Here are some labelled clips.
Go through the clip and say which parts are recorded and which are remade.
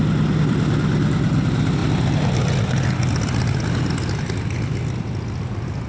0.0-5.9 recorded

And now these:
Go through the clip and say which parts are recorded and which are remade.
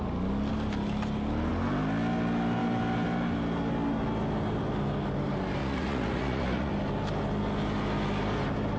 0.0-5.6 recorded; 5.6-6.7 remade; 6.7-8.8 recorded